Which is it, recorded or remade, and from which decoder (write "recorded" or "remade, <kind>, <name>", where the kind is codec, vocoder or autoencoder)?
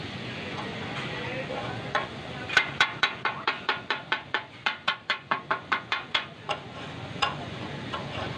remade, vocoder, Vocos